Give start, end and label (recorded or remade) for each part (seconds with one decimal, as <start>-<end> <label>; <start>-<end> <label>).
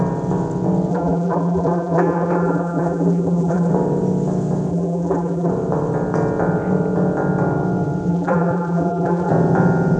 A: 0.0-0.9 recorded; 0.9-3.7 remade; 3.7-4.7 recorded; 4.7-5.5 remade; 5.5-8.1 recorded; 8.1-9.3 remade; 9.3-10.0 recorded